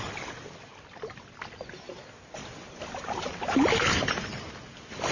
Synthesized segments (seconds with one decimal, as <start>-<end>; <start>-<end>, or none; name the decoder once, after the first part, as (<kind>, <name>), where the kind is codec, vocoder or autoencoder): none